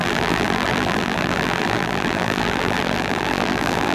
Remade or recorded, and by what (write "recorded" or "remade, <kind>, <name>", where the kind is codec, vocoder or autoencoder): remade, vocoder, BigVGAN v2